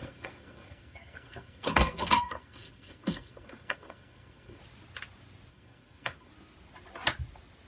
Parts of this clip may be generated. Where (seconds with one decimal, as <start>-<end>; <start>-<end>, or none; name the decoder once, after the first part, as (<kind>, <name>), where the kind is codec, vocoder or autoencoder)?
0.0-4.6 (codec, SNAC); 5.5-6.3